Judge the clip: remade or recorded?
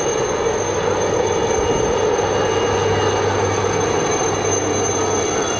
recorded